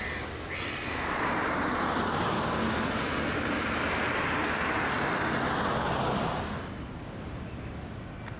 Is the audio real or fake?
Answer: real